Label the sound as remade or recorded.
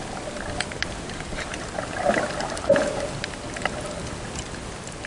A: recorded